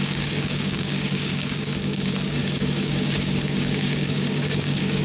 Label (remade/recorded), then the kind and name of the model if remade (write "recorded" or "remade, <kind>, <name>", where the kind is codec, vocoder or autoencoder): remade, codec, DAC